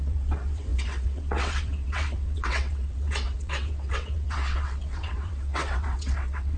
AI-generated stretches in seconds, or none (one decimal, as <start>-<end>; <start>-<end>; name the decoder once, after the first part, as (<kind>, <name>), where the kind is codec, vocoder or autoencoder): 0.0-6.6 (vocoder, WaveNeXt)